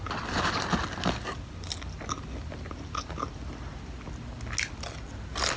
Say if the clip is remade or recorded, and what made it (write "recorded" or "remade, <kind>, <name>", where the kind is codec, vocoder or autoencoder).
recorded